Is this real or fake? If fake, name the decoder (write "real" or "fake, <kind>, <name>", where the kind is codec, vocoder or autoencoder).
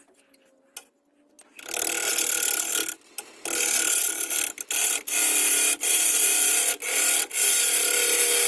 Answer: real